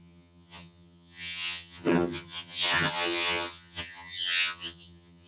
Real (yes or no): no